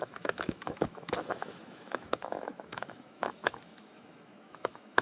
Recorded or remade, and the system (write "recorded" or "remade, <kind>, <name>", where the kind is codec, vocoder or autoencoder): remade, autoencoder, DAC-VAE